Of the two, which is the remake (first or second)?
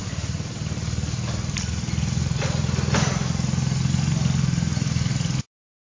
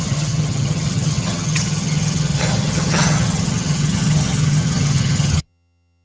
second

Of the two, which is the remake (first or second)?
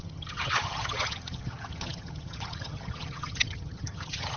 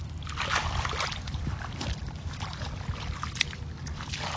first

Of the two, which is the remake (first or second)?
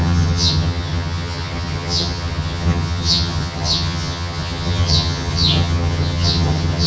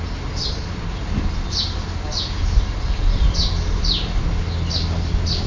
first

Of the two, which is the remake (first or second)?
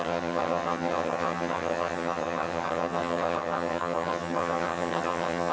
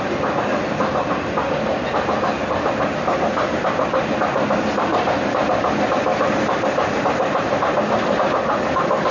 first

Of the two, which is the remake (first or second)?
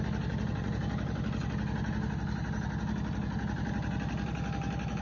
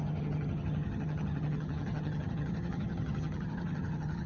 second